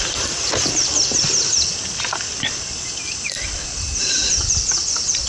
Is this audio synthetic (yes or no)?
no